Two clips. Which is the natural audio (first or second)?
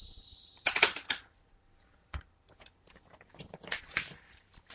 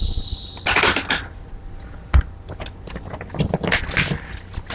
second